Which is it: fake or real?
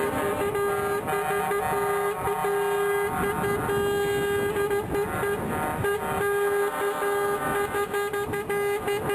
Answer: real